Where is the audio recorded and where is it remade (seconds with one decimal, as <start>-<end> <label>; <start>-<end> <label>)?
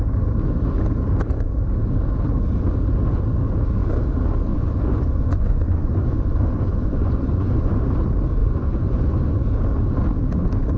0.0-4.5 recorded; 4.5-7.8 remade; 7.8-8.4 recorded; 8.4-9.3 remade; 9.3-10.8 recorded